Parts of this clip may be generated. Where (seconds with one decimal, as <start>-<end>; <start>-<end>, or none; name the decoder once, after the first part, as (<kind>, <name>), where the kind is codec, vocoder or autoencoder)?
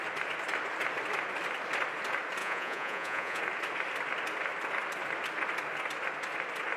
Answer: 2.4-3.4 (vocoder, Vocos)